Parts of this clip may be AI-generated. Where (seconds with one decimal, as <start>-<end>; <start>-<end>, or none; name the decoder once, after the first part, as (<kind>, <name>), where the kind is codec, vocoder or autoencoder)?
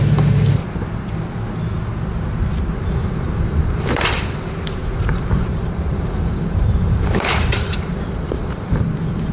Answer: 0.0-0.6 (vocoder, BigVGAN v2); 2.7-9.3